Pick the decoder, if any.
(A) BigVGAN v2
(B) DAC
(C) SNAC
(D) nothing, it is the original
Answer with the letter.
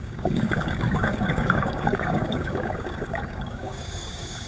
B